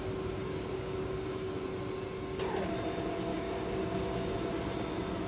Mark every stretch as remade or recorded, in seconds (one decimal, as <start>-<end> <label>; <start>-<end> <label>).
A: 0.0-0.4 recorded; 0.4-1.5 remade; 1.5-3.3 recorded; 3.3-4.5 remade; 4.5-5.3 recorded